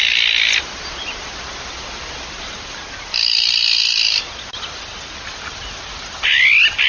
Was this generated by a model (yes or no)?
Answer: no